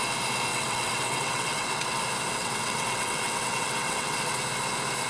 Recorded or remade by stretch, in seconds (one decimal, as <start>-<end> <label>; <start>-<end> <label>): 0.0-0.5 recorded; 0.5-2.0 remade; 2.0-2.4 recorded; 2.4-4.4 remade; 4.4-5.1 recorded